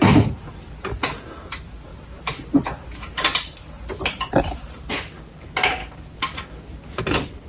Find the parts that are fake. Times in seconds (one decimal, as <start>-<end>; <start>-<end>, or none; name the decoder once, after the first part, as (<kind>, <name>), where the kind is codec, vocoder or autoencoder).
none